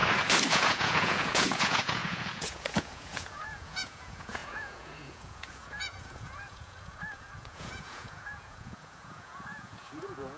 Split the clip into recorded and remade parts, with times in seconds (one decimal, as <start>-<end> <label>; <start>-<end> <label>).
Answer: 0.0-0.5 recorded; 0.5-10.4 remade